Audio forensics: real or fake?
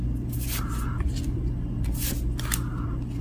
real